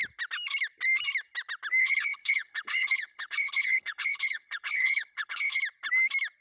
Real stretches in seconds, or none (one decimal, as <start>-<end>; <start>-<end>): 0.0-1.8; 5.6-6.4